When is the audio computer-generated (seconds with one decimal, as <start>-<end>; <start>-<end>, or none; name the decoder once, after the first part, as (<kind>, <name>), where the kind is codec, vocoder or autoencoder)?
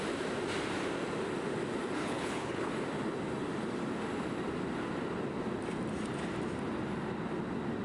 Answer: 2.0-2.7 (codec, HILCodec)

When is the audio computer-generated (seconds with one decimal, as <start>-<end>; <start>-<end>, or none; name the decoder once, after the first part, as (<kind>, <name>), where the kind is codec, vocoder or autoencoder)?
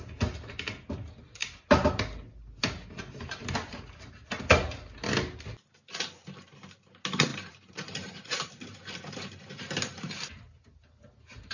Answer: 7.3-10.1 (vocoder, BigVGAN v2)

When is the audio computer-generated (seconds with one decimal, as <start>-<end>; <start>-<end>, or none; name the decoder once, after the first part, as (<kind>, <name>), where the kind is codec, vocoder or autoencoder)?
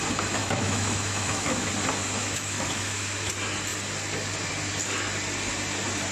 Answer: 0.4-1.7 (autoencoder, DAC-VAE); 2.2-3.3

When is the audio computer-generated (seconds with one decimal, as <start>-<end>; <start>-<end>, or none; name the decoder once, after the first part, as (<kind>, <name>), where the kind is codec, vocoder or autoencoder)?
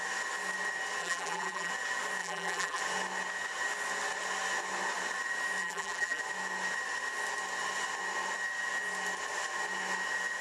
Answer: 1.0-1.7 (vocoder, BigVGAN v2); 2.2-2.8; 5.6-6.2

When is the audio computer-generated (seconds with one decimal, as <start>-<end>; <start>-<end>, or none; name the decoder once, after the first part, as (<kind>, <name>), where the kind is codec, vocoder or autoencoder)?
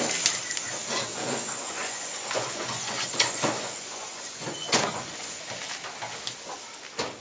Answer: 1.1-5.4 (vocoder, Vocos)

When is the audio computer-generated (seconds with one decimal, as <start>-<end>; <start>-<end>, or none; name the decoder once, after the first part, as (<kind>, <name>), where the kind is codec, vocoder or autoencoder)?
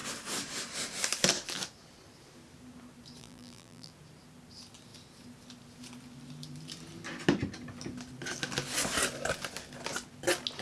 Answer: 3.2-3.9 (vocoder, BigVGAN v2)